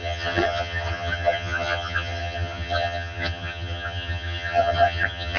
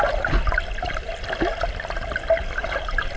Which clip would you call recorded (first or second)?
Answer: second